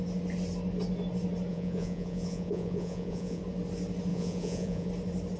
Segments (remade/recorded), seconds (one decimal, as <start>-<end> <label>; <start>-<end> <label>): 0.0-1.5 recorded; 1.5-3.4 remade; 3.4-4.1 recorded; 4.1-4.9 remade; 4.9-5.4 recorded